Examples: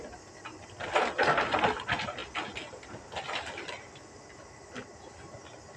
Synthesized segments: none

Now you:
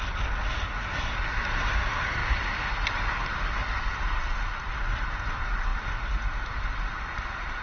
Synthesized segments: none

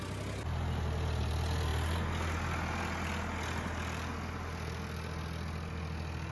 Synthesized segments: none

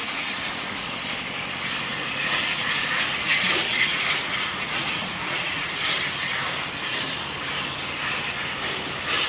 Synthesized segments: 0.0-0.9 (vocoder, Vocos); 1.9-5.8

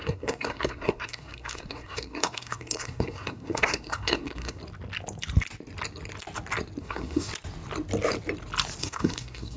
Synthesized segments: 0.0-4.6 (codec, SNAC); 6.8-7.3; 8.8-9.6

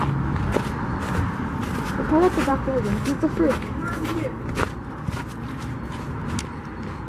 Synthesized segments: 2.5-4.4 (codec, DAC)

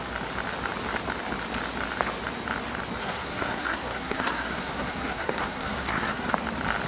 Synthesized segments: 3.0-6.3 (codec, SNAC)

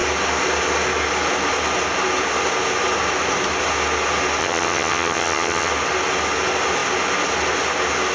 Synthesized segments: 4.4-5.7 (vocoder, HiFi-GAN)